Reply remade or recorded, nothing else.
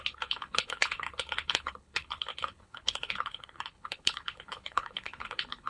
remade